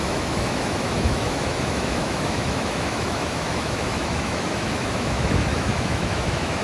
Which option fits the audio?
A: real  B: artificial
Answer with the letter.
B